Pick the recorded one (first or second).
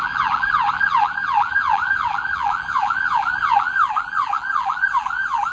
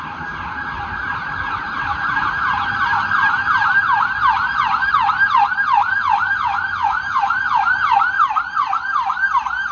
second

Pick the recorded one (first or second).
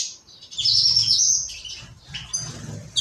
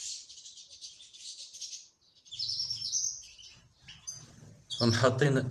first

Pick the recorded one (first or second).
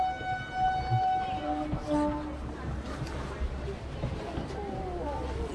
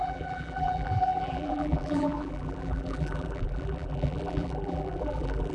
first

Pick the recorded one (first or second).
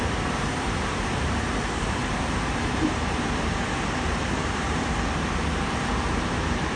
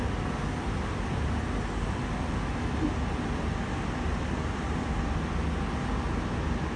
second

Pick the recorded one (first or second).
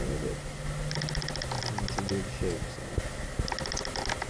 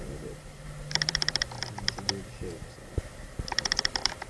first